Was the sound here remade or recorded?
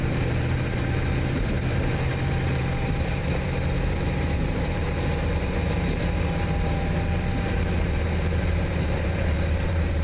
remade